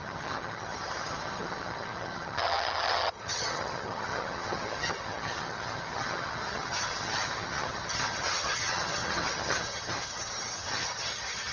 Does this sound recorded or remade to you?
remade